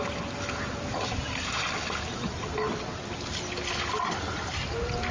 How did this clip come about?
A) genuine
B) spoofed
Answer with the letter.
A